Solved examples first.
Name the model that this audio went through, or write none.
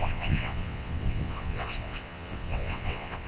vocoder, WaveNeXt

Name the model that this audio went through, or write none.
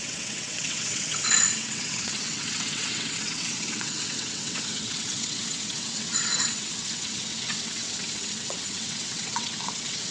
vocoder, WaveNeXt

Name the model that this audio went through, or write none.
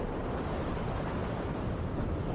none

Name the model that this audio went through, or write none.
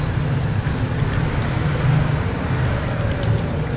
none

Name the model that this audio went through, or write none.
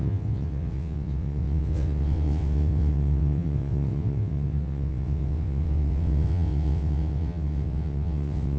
vocoder, WaveNeXt